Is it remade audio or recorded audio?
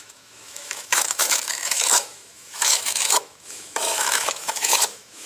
remade